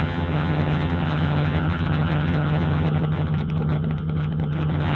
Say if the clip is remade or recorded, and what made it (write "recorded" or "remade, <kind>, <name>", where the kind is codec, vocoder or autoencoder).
remade, vocoder, HiFi-GAN